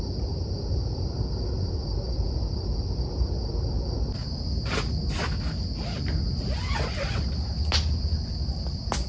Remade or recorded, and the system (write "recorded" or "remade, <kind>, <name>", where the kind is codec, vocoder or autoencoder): recorded